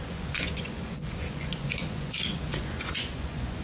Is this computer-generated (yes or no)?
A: yes